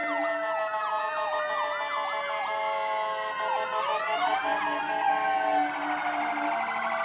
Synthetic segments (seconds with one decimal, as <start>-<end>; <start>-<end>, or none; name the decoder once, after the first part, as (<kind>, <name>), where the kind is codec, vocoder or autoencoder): none